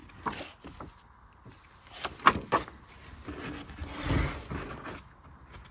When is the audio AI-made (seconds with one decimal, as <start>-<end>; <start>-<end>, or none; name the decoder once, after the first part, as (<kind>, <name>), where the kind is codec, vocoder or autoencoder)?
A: none